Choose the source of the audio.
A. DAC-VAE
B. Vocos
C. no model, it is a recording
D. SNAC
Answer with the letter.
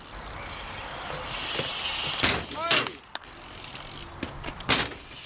C